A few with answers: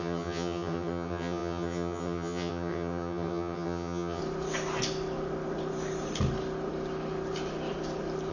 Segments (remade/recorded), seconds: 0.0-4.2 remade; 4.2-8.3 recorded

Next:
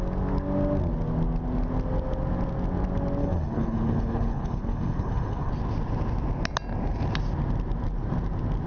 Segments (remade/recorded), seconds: 0.0-3.2 recorded; 3.2-5.5 remade; 5.5-8.7 recorded

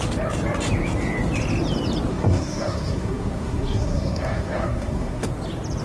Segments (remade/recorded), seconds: 0.0-2.1 recorded; 2.1-5.3 remade; 5.3-5.8 recorded

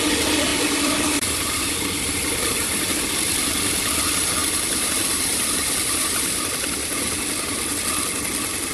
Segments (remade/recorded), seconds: 0.0-0.5 recorded; 0.5-2.9 remade; 2.9-4.4 recorded; 4.4-7.2 remade; 7.2-8.7 recorded

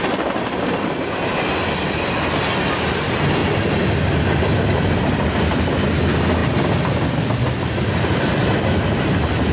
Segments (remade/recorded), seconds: 0.0-9.5 recorded

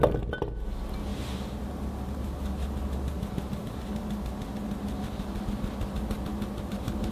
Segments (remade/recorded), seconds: 0.0-7.1 recorded

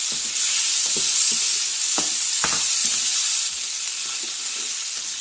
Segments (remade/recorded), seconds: 0.0-5.2 recorded

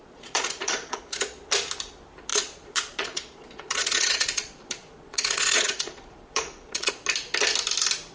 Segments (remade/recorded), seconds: 0.0-1.4 remade; 1.4-2.3 recorded; 2.3-6.9 remade; 6.9-8.1 recorded